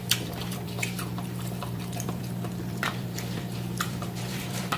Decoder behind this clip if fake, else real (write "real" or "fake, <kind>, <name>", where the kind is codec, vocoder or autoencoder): fake, vocoder, BigVGAN v2